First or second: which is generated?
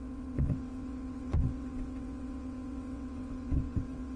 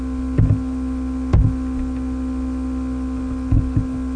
first